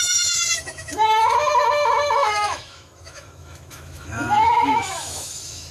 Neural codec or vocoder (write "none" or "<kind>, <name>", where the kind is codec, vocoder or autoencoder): autoencoder, DAC-VAE